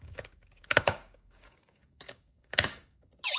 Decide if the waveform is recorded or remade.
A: remade